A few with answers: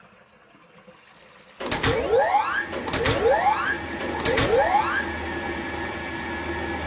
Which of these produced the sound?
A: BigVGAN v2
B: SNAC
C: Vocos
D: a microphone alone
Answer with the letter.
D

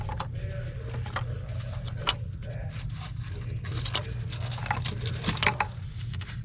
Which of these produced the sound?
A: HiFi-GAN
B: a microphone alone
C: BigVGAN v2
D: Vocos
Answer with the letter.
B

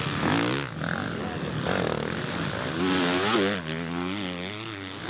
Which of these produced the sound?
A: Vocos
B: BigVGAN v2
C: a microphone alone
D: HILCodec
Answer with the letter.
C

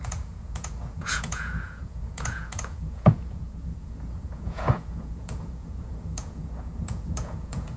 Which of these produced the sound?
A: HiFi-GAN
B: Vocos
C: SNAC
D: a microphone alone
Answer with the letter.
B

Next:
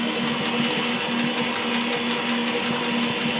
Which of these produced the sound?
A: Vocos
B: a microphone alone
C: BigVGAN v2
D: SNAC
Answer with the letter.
B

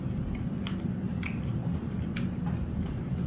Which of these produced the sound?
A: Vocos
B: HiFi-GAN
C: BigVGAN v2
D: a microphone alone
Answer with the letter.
D